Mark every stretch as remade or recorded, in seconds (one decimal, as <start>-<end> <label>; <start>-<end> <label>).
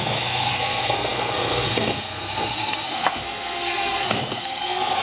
0.0-5.0 remade